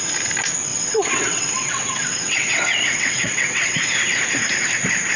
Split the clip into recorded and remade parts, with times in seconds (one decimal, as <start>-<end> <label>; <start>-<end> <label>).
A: 0.0-0.7 recorded; 0.7-3.8 remade; 3.8-5.2 recorded